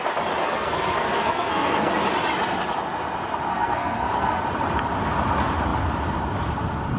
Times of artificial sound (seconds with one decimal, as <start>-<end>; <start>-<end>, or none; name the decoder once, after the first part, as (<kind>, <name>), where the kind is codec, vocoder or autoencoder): 0.4-1.9 (codec, SNAC); 3.5-4.4